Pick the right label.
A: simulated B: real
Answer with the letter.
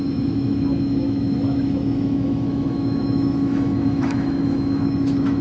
A